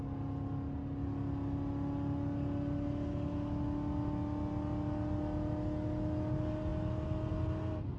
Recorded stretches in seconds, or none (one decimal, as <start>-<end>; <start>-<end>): 0.0-8.0